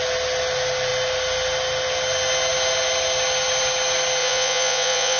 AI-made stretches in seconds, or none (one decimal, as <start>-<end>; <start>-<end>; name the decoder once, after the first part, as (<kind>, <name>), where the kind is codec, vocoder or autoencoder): 4.2-5.2 (vocoder, Vocos)